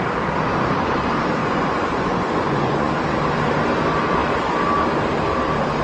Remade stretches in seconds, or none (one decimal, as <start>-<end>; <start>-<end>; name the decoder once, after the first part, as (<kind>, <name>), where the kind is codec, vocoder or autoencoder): 1.4-2.9 (vocoder, Vocos)